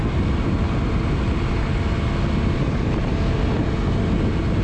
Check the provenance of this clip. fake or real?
real